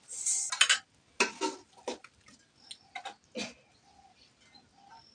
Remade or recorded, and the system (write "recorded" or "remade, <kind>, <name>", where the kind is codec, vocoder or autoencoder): recorded